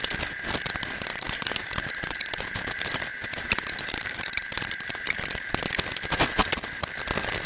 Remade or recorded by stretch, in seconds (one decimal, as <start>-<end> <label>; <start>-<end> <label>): 0.0-1.1 recorded; 1.1-5.6 remade; 5.6-6.4 recorded; 6.4-7.0 remade; 7.0-7.5 recorded